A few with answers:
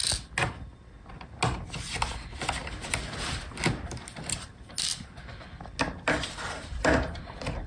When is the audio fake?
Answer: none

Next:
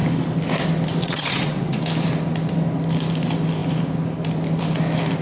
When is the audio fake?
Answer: 1.0-1.8 (vocoder, WaveNeXt)

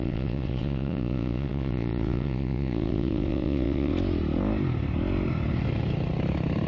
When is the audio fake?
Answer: 0.0-3.9 (vocoder, WaveNeXt)

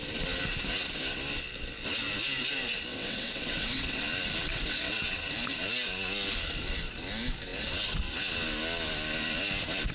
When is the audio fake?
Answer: 2.9-4.0 (vocoder, WaveNeXt); 4.5-5.0

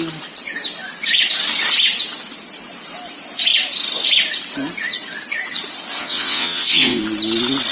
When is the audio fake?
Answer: 6.0-7.0 (vocoder, WaveNeXt)

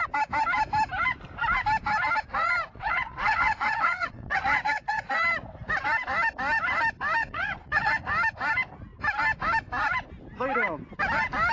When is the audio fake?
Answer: 2.7-5.0 (vocoder, WaveNeXt); 7.2-7.9

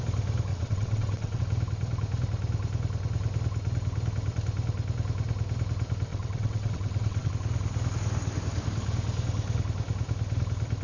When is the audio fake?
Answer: 0.5-1.4 (vocoder, WaveNeXt); 6.1-7.3